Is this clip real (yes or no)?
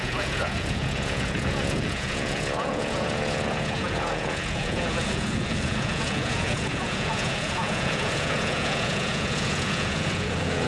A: no